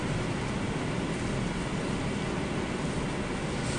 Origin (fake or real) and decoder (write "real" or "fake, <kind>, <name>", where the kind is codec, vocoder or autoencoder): real